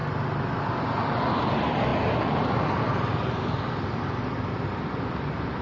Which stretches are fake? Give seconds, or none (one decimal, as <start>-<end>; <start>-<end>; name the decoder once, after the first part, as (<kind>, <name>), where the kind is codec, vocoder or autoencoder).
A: none